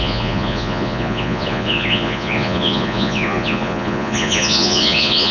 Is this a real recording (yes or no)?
no